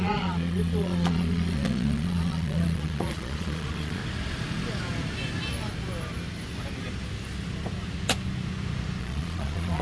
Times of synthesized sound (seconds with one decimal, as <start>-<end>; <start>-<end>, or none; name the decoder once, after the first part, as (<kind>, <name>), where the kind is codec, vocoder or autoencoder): 0.0-4.0 (vocoder, Vocos); 9.0-9.8